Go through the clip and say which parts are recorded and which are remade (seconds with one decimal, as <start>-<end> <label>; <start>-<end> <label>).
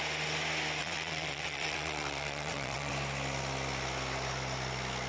0.0-0.8 recorded; 0.8-2.9 remade; 2.9-5.1 recorded